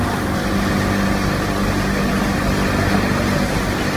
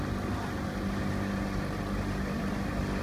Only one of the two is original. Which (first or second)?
first